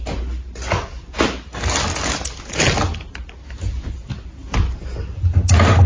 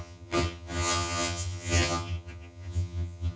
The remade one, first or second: second